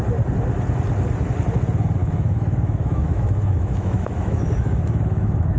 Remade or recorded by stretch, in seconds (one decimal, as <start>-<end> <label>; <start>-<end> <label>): 0.0-2.0 recorded; 2.0-5.6 remade